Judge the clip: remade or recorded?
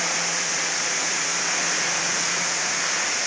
remade